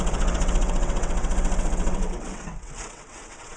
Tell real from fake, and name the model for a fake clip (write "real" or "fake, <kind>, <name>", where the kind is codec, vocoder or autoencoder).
fake, vocoder, WaveNeXt